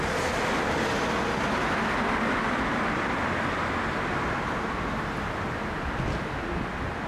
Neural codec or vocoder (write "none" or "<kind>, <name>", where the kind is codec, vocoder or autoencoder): none